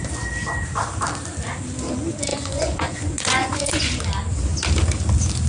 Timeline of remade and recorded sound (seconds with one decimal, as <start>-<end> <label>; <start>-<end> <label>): 0.0-2.3 recorded; 2.3-4.0 remade; 4.0-5.5 recorded